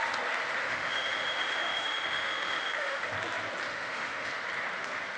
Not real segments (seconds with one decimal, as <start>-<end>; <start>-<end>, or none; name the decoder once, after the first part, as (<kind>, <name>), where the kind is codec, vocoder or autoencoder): 0.6-3.1 (autoencoder, DAC-VAE); 3.7-4.3